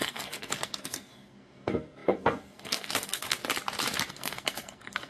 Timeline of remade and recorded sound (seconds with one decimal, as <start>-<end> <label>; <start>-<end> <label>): 0.0-3.4 remade; 3.4-4.1 recorded; 4.1-5.1 remade

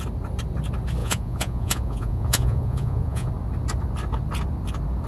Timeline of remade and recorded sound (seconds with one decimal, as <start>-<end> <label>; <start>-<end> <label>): 0.0-1.0 recorded; 1.0-3.3 remade; 3.3-5.1 recorded

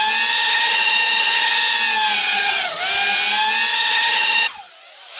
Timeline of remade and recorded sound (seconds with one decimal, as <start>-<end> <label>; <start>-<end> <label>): 0.0-0.4 recorded; 0.4-1.5 remade; 1.5-2.2 recorded; 2.2-2.8 remade; 2.8-3.7 recorded; 3.7-4.7 remade; 4.7-5.2 recorded

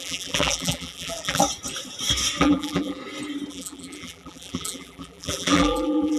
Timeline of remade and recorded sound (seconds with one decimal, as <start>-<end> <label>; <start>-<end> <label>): 0.0-1.4 remade; 1.4-2.4 recorded; 2.4-3.0 remade; 3.0-3.5 recorded; 3.5-6.2 remade

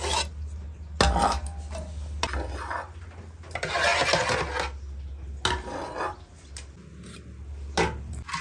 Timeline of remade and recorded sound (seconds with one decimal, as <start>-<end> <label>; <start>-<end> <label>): 0.0-8.4 recorded

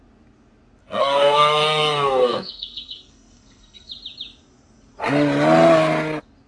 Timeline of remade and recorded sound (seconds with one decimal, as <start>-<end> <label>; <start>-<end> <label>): 0.0-0.8 recorded; 0.8-3.9 remade; 3.9-6.5 recorded

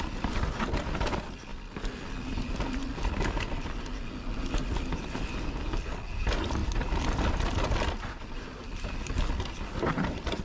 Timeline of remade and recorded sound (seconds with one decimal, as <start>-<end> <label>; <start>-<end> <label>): 0.0-10.4 recorded